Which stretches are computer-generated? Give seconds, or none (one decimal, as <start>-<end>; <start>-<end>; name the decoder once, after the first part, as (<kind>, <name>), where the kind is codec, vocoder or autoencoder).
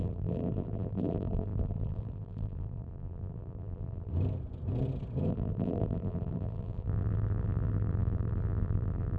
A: 0.0-4.1 (vocoder, BigVGAN v2); 5.3-9.2